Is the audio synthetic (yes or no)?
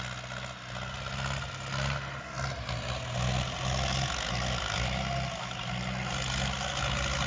no